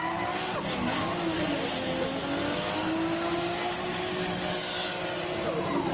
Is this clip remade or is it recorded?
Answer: recorded